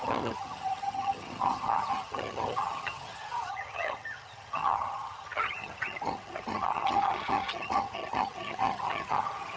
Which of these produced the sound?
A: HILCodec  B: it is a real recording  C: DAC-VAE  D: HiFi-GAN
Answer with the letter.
D